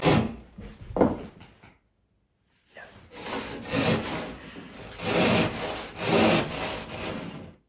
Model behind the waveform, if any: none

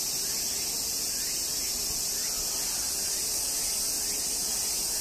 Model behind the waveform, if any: none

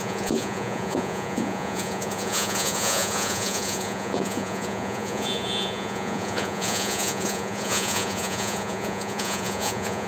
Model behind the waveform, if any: vocoder, Vocos